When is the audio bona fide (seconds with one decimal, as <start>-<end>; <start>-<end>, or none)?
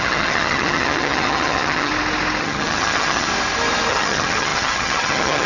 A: 1.9-2.4; 3.3-3.9